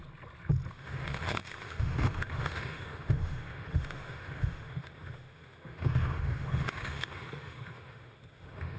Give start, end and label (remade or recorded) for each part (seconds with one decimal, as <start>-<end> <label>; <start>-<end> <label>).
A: 0.0-0.7 recorded; 0.7-8.8 remade